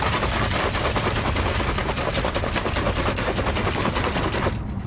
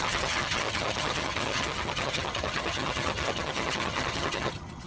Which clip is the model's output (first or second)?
second